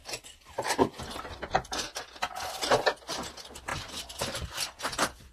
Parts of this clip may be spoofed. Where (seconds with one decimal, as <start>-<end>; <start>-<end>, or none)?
0.0-2.5; 3.7-4.8